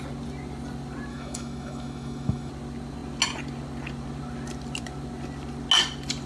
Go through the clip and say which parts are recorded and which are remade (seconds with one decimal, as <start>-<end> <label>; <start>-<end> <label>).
0.0-1.1 recorded; 1.1-2.5 remade; 2.5-6.3 recorded